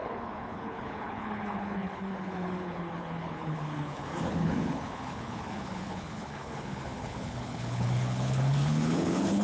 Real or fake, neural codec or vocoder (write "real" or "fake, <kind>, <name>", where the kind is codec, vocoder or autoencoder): fake, codec, HILCodec